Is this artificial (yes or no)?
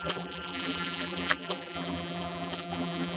yes